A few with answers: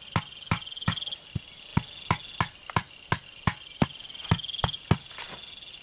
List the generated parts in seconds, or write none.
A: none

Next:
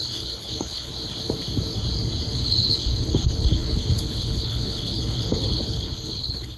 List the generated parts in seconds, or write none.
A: 0.0-0.9 (codec, HILCodec); 2.3-6.6

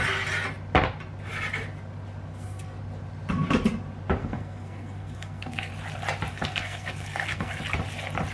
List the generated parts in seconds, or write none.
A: 2.3-2.8 (codec, SNAC); 4.2-5.7; 6.3-7.6

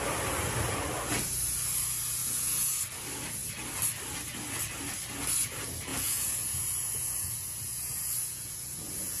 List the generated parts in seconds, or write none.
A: 2.2-2.8 (vocoder, Vocos); 5.9-9.2

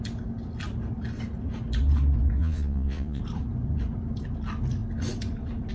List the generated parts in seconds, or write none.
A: 2.4-3.2 (vocoder, Vocos)